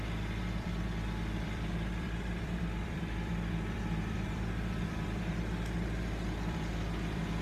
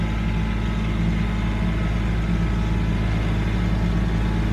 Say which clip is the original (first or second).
second